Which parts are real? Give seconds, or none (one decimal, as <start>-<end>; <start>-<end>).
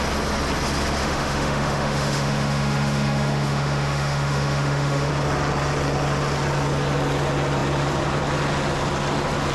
0.0-1.0; 5.1-9.5